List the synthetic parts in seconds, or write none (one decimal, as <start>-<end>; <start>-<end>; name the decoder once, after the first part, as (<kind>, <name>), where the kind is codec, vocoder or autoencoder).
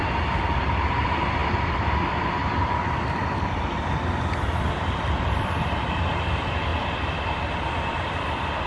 none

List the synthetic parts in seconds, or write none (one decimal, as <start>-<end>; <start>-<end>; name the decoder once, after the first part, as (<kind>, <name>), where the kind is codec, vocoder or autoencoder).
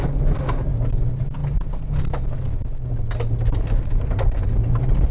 none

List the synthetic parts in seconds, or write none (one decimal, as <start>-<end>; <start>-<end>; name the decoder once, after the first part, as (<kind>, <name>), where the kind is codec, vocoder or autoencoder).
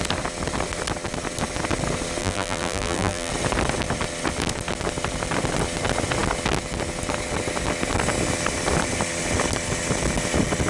2.2-3.3 (vocoder, BigVGAN v2)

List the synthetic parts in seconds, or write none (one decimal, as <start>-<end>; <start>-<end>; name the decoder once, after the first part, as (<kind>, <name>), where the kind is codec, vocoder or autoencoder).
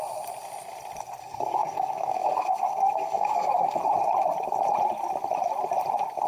1.2-3.8 (codec, SNAC)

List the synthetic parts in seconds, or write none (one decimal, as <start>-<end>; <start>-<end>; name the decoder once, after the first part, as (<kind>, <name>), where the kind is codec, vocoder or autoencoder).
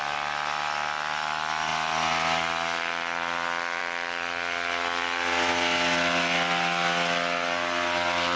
none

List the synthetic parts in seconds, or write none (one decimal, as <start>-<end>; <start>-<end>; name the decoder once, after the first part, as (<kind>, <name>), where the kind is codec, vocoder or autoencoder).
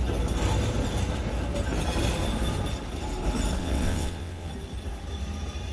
3.6-4.5 (vocoder, WaveNeXt)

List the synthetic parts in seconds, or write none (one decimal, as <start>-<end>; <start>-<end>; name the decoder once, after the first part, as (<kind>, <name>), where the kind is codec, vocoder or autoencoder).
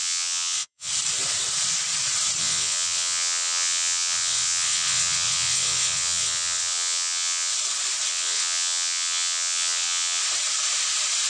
0.0-0.9 (vocoder, WaveNeXt); 2.4-7.5; 8.1-10.2